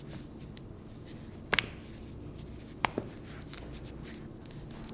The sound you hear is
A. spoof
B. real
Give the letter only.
B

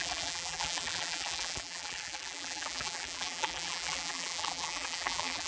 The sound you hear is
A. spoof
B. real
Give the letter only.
A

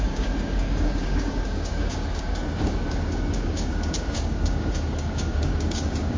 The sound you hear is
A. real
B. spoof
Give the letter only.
B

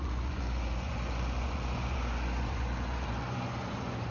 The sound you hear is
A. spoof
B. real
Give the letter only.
A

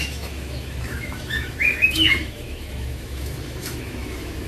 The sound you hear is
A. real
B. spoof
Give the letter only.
B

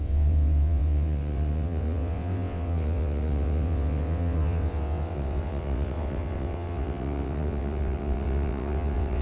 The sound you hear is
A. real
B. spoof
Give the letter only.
B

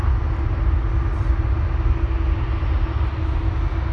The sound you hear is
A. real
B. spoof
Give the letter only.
A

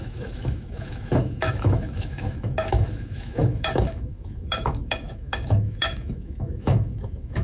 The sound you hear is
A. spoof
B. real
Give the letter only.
A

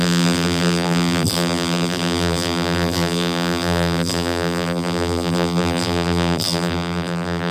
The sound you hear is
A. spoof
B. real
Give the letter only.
A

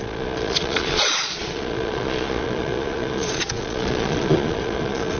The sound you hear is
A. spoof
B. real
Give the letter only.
A